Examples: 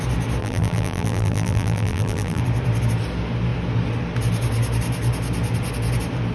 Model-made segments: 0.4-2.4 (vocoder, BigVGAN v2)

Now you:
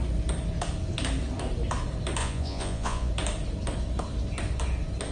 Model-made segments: 2.2-3.1 (vocoder, Vocos)

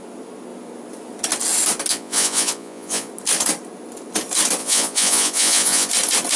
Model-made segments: 1.9-3.1 (vocoder, Vocos); 4.6-5.9

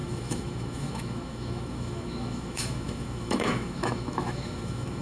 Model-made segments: 0.0-5.0 (autoencoder, DAC-VAE)

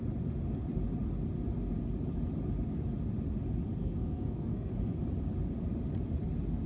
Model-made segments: 3.8-4.7 (codec, SNAC)

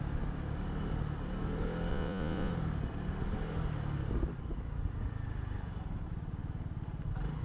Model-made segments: 1.9-2.5 (vocoder, Vocos)

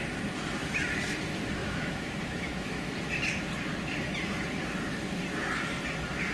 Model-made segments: 1.6-2.9 (autoencoder, DAC-VAE)

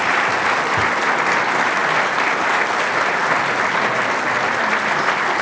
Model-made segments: none